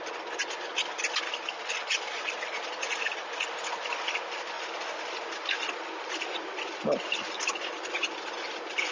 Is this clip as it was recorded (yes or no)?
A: no